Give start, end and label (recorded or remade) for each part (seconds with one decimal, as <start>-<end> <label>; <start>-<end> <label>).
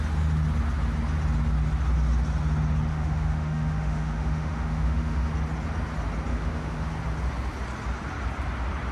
0.0-2.9 recorded; 2.9-5.3 remade; 5.3-6.3 recorded; 6.3-6.9 remade; 6.9-8.9 recorded